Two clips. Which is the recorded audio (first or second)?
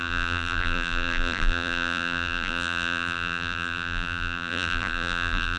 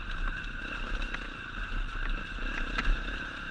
second